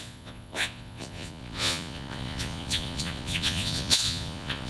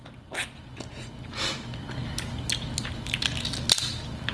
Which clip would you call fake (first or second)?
first